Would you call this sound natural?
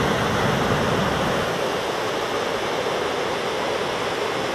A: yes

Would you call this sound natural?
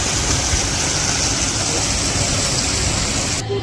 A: yes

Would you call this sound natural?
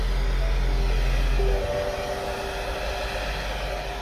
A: yes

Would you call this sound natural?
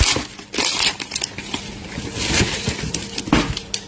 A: yes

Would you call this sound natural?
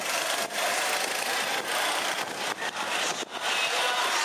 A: yes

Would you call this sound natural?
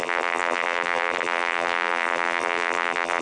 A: no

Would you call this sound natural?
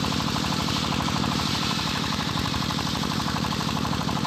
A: no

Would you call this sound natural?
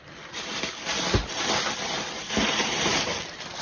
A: no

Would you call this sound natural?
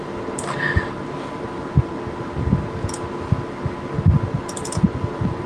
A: yes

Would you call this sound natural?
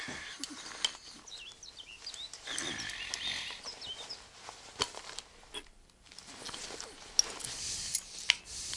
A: yes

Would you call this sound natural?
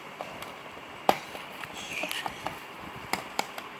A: no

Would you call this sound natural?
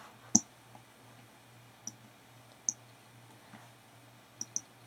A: yes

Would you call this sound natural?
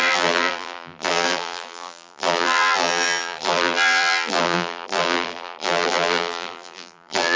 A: no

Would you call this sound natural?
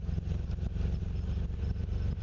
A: yes